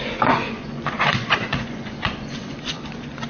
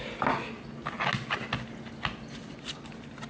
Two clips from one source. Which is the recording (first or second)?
second